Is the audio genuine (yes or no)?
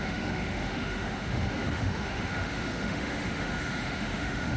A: no